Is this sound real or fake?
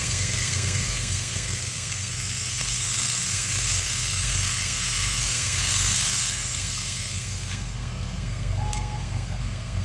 fake